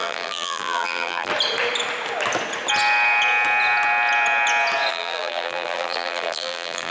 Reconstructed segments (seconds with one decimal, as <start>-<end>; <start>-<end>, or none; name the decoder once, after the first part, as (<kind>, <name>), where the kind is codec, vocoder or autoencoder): 0.0-1.3 (vocoder, BigVGAN v2); 4.9-6.9